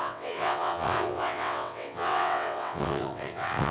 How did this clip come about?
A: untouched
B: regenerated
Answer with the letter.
B